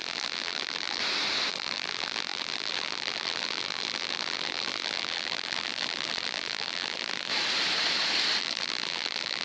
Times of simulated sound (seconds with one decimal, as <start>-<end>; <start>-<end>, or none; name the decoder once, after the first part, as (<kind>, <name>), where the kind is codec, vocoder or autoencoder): 0.0-1.0 (vocoder, BigVGAN v2); 1.5-7.3; 8.4-9.4